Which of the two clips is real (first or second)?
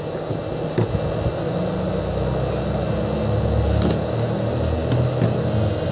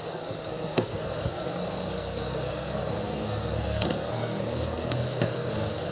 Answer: first